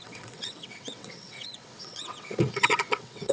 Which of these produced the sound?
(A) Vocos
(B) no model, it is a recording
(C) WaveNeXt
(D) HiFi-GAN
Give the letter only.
C